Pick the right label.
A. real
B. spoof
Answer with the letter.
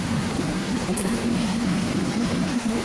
B